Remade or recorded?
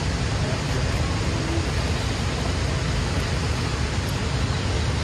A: recorded